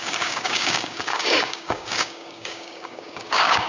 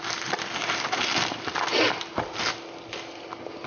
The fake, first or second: first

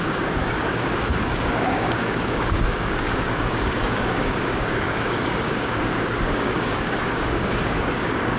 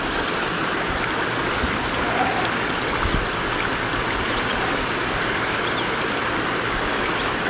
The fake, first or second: first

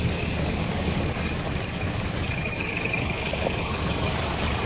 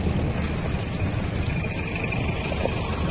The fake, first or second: first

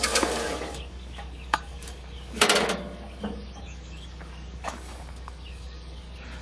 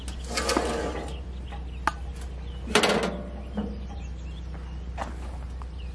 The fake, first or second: first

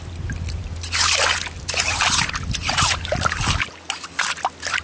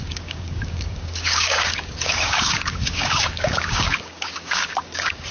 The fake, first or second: second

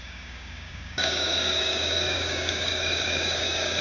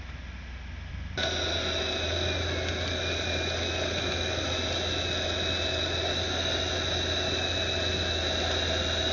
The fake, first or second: first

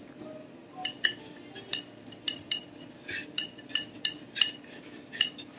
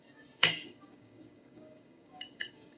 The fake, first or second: second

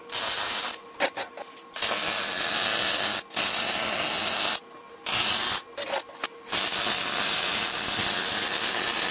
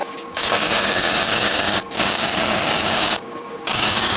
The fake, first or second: second